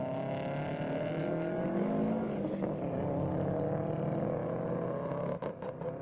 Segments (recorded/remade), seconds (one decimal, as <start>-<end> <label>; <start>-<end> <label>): 0.0-1.2 recorded; 1.2-3.6 remade; 3.6-6.0 recorded